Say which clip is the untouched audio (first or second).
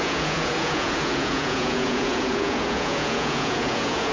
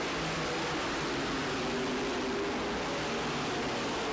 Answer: second